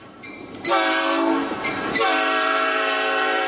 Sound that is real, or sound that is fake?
fake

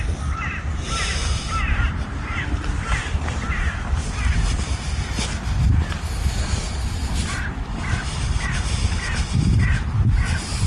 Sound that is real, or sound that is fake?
real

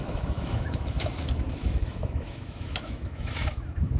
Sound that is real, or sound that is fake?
fake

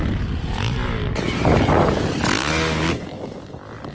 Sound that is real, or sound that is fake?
real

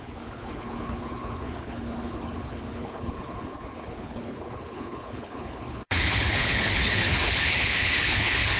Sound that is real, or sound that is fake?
fake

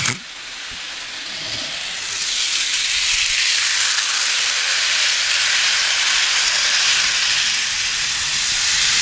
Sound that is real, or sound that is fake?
real